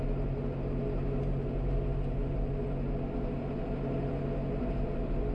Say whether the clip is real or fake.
real